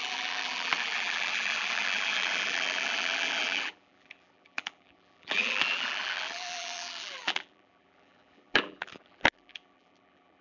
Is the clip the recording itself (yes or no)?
no